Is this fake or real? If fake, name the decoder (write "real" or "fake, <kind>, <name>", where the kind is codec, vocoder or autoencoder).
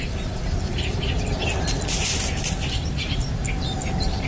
real